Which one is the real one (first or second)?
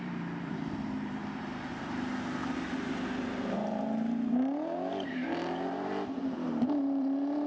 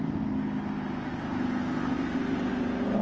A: second